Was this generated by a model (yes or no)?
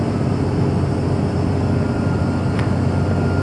yes